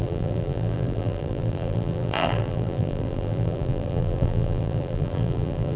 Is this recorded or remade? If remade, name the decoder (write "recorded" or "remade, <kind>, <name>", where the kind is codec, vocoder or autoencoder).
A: remade, vocoder, BigVGAN v2